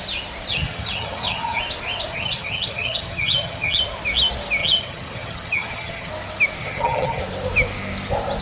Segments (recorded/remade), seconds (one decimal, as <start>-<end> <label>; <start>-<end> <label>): 0.0-0.5 recorded; 0.5-1.6 remade; 1.6-2.1 recorded; 2.1-3.8 remade; 3.8-4.6 recorded; 4.6-6.1 remade; 6.1-6.6 recorded; 6.6-7.2 remade; 7.2-8.4 recorded